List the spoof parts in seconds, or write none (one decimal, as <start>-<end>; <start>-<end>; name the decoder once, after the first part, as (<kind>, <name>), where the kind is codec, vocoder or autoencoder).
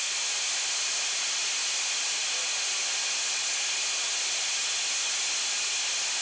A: none